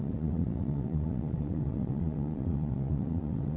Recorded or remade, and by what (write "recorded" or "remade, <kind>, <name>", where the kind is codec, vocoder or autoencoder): remade, vocoder, WaveNeXt